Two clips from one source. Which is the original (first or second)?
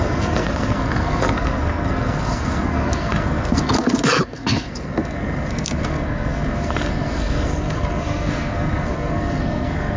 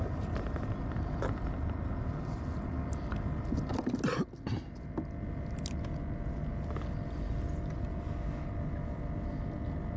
second